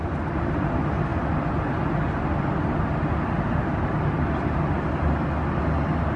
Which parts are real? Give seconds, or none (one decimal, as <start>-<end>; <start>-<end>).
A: 0.0-6.2